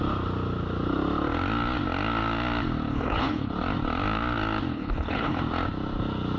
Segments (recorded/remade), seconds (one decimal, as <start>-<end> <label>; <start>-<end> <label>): 0.0-2.9 recorded; 2.9-3.5 remade; 3.5-4.7 recorded; 4.7-5.4 remade; 5.4-6.4 recorded